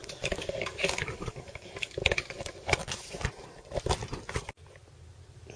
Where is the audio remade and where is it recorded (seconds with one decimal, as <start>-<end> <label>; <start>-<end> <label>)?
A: 0.0-3.1 remade; 3.1-5.6 recorded